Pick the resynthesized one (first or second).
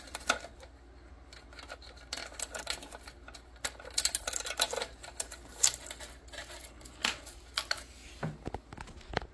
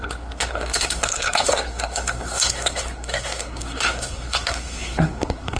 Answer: second